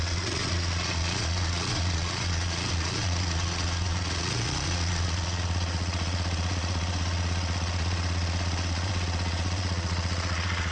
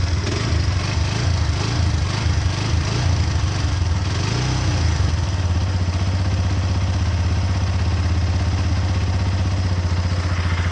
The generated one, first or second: first